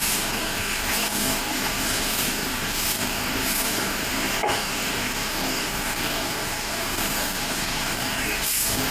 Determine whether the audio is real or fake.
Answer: fake